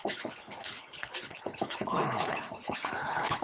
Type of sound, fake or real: fake